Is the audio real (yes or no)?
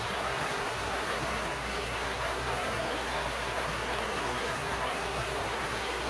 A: no